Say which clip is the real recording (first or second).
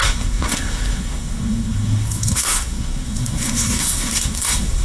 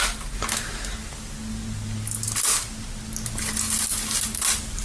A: second